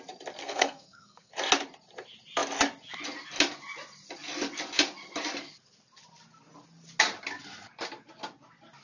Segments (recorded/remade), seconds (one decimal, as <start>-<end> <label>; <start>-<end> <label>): 0.0-0.4 recorded; 0.4-1.3 remade; 1.3-8.8 recorded